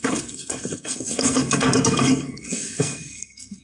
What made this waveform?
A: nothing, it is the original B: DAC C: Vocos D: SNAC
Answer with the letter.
D